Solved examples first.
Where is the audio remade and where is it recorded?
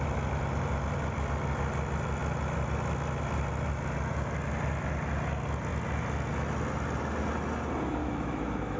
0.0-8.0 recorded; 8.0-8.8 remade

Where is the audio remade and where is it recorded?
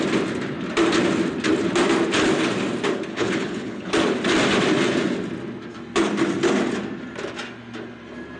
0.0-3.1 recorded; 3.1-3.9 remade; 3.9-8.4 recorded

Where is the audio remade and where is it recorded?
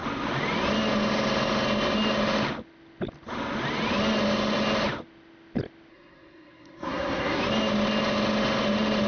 0.0-5.9 recorded; 5.9-7.4 remade; 7.4-9.1 recorded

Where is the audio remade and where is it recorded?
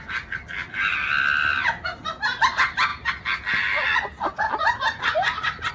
0.0-5.7 recorded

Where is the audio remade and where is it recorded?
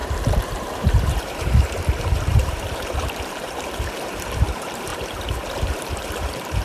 0.0-6.6 remade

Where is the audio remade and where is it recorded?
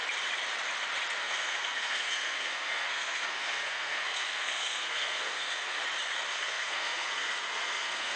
0.0-1.2 recorded; 1.2-5.8 remade; 5.8-6.3 recorded; 6.3-8.2 remade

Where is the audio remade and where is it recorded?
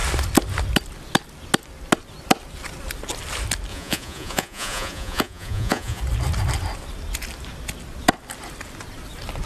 0.0-3.7 recorded; 3.7-6.0 remade; 6.0-9.5 recorded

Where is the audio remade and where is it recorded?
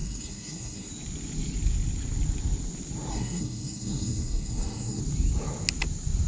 0.0-0.9 remade; 0.9-3.1 recorded; 3.1-5.0 remade; 5.0-6.3 recorded